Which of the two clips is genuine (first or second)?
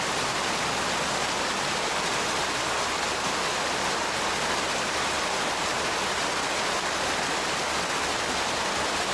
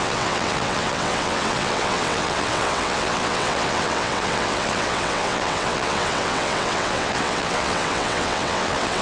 first